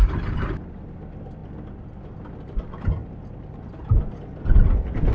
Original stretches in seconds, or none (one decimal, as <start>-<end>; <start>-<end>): 0.0-5.1